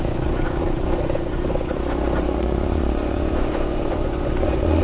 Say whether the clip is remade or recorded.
remade